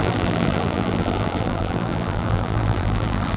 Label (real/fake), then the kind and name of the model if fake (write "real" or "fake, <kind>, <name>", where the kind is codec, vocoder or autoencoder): fake, vocoder, BigVGAN v2